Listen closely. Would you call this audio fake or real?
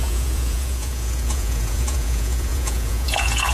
fake